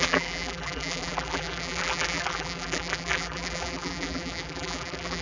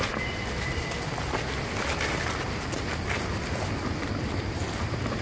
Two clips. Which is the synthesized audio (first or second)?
first